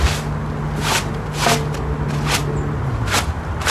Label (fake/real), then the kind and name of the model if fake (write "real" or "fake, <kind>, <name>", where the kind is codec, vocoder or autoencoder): real